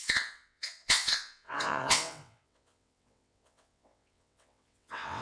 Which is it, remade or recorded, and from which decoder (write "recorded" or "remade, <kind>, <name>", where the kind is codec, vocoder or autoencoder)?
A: remade, vocoder, WaveNeXt